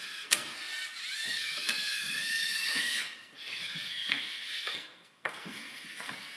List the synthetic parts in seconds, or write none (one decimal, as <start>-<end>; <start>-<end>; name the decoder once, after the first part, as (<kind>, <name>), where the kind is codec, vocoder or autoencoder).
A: 0.0-0.7 (codec, SNAC); 1.3-6.4